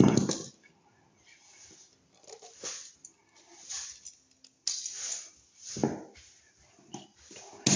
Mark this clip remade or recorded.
recorded